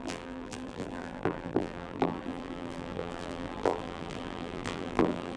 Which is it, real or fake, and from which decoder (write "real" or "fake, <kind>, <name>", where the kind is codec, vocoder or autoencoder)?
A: fake, vocoder, BigVGAN v2